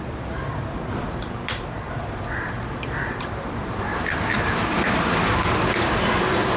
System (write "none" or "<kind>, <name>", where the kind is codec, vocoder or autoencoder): vocoder, BigVGAN v2